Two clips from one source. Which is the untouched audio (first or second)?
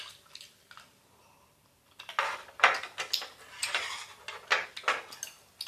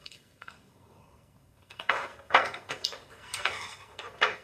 first